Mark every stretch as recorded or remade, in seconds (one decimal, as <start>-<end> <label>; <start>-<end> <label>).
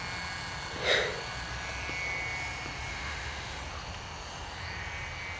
0.0-2.9 recorded; 2.9-3.6 remade; 3.6-5.4 recorded